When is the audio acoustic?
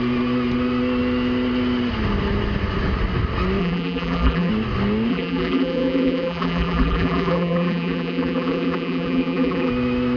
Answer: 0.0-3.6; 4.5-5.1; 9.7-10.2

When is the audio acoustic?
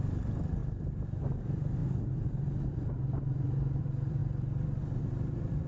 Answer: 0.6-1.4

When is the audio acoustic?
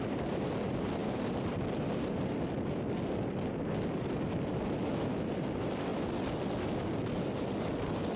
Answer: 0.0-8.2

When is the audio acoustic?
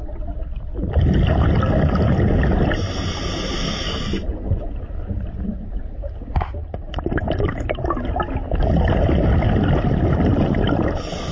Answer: 0.0-5.5; 6.4-11.3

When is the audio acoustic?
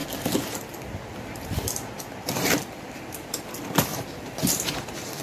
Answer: 0.0-3.9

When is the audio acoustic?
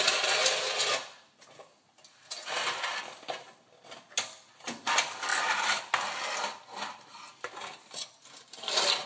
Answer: 0.0-9.1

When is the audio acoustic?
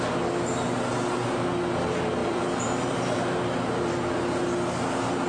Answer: 0.0-2.2; 3.9-5.3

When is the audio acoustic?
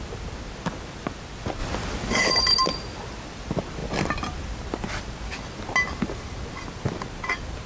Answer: 0.0-7.7